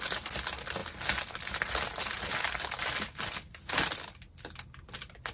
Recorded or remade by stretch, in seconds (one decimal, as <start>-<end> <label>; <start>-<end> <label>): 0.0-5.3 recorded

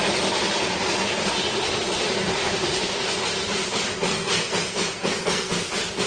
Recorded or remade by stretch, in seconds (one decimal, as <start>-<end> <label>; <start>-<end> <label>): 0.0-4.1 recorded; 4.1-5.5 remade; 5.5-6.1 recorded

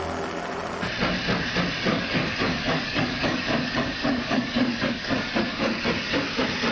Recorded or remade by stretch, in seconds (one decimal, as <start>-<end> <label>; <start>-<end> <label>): 0.0-1.9 recorded; 1.9-5.8 remade; 5.8-6.7 recorded

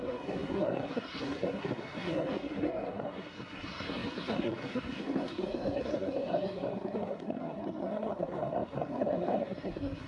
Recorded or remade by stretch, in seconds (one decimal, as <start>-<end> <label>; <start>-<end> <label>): 0.0-10.1 remade

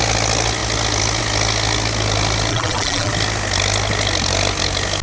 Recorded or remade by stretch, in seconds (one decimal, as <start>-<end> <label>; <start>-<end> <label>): 0.0-2.5 recorded; 2.5-3.1 remade; 3.1-5.0 recorded

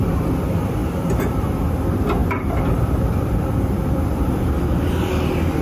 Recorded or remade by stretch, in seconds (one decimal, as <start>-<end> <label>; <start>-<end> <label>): 0.0-2.2 recorded; 2.2-5.1 remade; 5.1-5.6 recorded